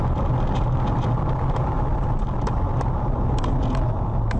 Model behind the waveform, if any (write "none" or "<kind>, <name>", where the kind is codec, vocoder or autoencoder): none